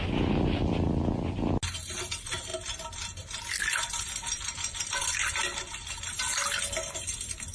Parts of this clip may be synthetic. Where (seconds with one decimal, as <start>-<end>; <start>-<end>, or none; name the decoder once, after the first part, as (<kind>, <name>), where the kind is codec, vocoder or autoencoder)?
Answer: none